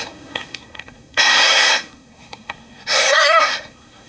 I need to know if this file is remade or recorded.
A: remade